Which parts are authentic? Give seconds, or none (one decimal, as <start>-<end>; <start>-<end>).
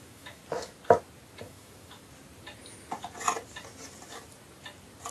0.4-1.4; 2.0-5.1